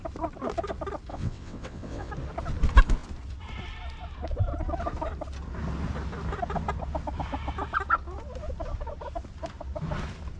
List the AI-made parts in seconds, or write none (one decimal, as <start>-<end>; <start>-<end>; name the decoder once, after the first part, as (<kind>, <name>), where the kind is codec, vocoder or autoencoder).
1.1-2.1 (vocoder, WaveNeXt)